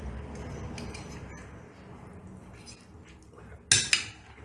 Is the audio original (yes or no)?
yes